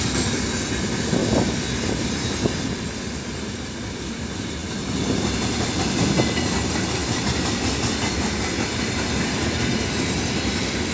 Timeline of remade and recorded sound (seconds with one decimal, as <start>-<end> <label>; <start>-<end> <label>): 0.0-10.9 recorded